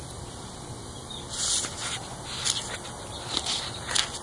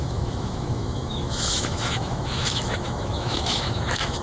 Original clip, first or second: first